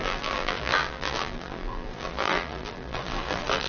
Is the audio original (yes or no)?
no